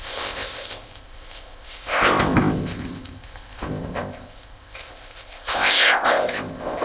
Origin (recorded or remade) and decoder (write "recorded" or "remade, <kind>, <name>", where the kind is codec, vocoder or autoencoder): remade, codec, ZipCodec